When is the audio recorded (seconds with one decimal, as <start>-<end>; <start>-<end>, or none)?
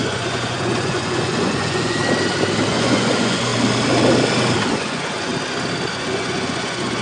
2.0-2.7; 3.5-4.7; 5.3-5.9